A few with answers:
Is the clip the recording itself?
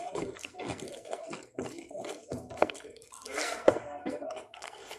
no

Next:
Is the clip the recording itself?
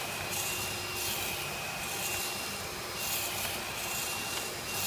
no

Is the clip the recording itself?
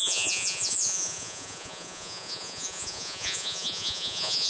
no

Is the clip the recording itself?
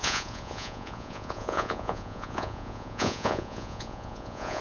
no